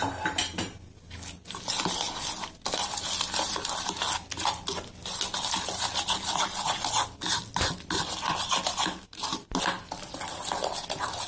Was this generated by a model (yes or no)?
no